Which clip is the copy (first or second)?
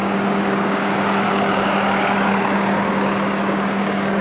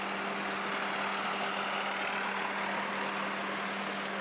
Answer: first